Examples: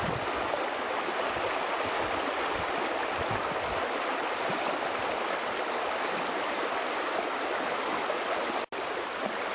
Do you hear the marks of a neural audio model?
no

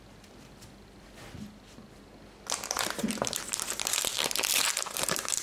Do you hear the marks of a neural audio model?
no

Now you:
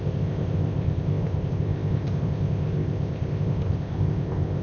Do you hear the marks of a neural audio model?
yes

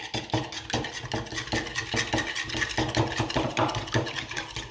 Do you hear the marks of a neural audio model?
no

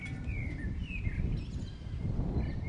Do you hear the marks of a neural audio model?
no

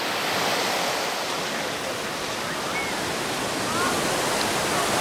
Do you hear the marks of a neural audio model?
no